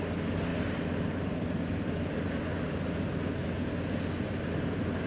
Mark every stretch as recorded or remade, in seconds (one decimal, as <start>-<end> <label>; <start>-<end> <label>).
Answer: 0.0-5.1 recorded